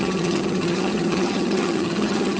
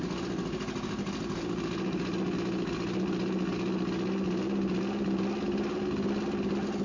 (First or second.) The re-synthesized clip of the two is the first